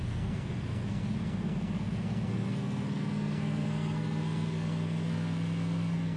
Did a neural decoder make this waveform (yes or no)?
yes